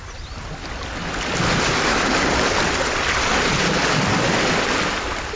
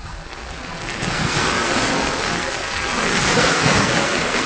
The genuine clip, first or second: first